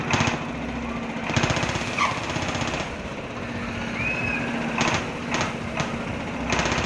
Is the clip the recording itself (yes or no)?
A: yes